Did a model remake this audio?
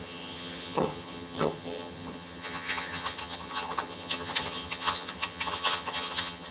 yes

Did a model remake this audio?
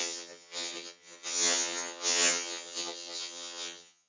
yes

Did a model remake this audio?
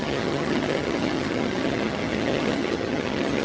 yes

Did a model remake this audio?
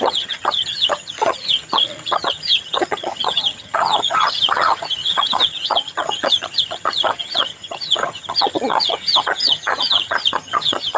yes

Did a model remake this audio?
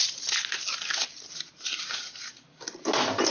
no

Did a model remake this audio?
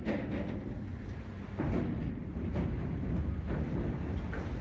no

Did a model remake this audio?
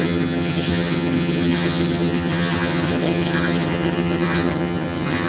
yes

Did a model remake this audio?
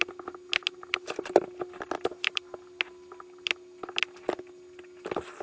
no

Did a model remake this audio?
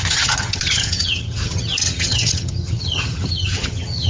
yes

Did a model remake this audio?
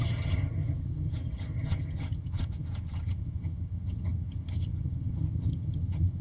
yes